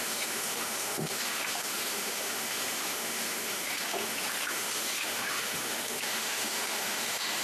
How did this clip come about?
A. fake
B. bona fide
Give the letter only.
A